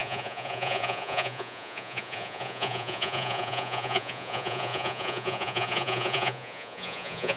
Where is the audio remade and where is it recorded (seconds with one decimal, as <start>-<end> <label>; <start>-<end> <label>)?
0.0-7.4 remade